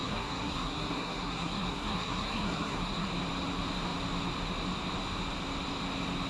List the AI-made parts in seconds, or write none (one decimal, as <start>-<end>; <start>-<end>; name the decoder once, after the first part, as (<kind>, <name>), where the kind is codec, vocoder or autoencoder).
0.0-3.1 (codec, SNAC)